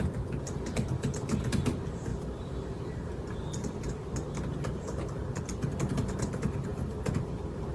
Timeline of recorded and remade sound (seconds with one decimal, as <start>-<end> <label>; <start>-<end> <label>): 0.0-2.1 recorded; 2.1-5.4 remade; 5.4-6.7 recorded; 6.7-7.7 remade